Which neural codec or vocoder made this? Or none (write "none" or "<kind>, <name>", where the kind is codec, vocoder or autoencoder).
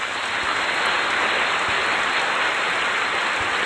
none